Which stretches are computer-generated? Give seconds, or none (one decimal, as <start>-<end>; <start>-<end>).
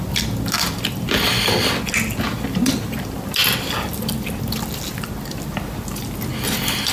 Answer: none